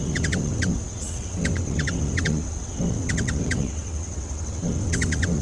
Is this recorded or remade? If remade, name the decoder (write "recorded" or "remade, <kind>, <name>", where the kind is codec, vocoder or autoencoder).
remade, vocoder, WaveNeXt